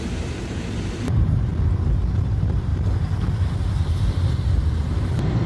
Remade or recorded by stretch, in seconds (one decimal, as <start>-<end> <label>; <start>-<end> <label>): 0.0-1.5 remade; 1.5-2.1 recorded; 2.1-2.7 remade; 2.7-4.3 recorded; 4.3-5.5 remade